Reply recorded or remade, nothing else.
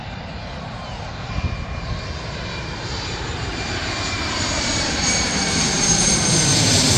remade